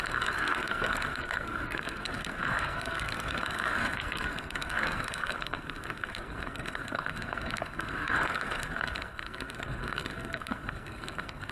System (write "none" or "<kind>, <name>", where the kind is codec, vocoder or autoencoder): codec, SNAC